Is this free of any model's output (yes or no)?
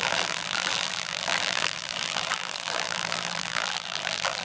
no